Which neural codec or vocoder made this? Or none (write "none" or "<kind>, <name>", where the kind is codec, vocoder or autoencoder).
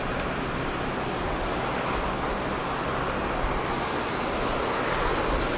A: none